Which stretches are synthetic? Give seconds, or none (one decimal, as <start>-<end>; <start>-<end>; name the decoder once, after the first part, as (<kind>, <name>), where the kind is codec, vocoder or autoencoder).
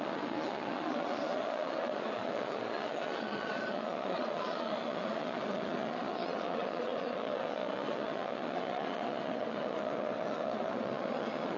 0.0-11.6 (vocoder, Vocos)